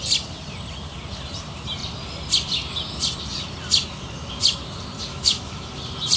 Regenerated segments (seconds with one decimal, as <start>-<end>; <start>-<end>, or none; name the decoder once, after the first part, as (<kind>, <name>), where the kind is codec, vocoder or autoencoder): 5.1-5.7 (autoencoder, DAC-VAE)